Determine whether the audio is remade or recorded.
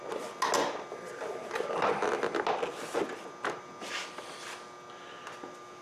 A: recorded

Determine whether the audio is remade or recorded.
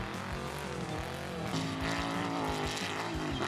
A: recorded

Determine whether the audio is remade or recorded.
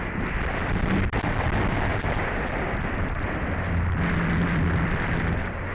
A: recorded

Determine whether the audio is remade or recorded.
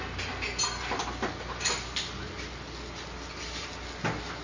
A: recorded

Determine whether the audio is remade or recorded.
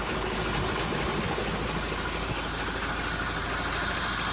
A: recorded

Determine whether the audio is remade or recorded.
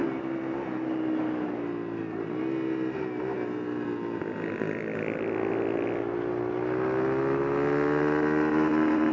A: recorded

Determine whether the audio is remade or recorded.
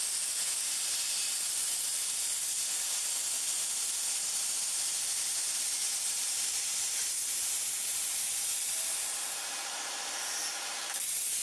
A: recorded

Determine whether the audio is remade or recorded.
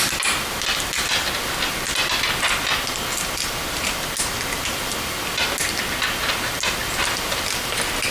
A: recorded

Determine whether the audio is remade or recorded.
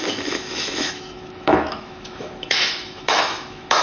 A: remade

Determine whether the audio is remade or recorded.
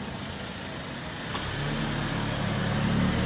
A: recorded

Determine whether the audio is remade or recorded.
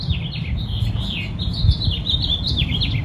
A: recorded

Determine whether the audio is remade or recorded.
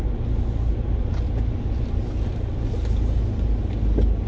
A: recorded